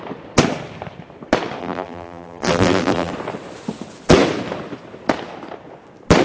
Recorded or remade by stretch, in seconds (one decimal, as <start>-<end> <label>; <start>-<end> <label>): 0.0-1.6 recorded; 1.6-3.1 remade; 3.1-6.2 recorded

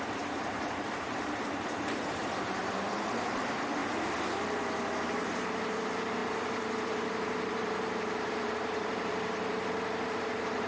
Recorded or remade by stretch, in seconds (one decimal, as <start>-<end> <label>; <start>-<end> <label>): 0.0-2.6 remade; 2.6-3.2 recorded; 3.2-3.8 remade; 3.8-5.0 recorded; 5.0-10.7 remade

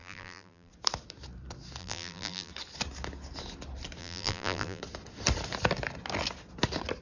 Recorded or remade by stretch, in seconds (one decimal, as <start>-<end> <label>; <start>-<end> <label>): 0.0-0.7 remade; 0.7-1.8 recorded; 1.8-2.5 remade; 2.5-4.0 recorded; 4.0-4.8 remade; 4.8-7.0 recorded

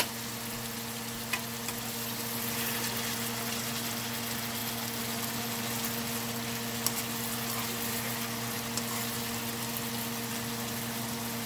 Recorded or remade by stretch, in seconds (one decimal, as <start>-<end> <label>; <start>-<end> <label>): 0.0-11.5 recorded

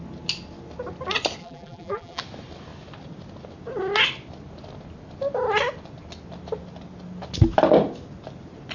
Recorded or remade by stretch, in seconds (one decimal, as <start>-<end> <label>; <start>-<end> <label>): 0.0-1.4 recorded; 1.4-2.2 remade; 2.2-8.7 recorded

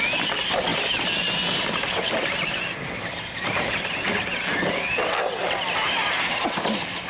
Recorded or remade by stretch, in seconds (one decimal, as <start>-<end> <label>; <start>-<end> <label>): 0.0-5.4 recorded; 5.4-6.3 remade; 6.3-7.1 recorded